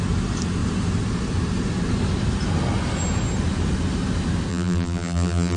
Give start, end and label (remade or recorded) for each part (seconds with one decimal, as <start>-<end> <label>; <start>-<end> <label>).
0.0-4.5 recorded; 4.5-5.6 remade